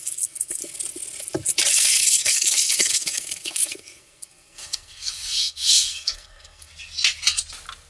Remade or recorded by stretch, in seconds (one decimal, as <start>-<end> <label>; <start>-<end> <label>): 0.0-0.6 remade; 0.6-1.7 recorded; 1.7-6.7 remade; 6.7-7.9 recorded